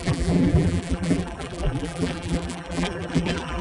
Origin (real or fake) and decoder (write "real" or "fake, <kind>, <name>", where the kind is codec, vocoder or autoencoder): fake, vocoder, BigVGAN v2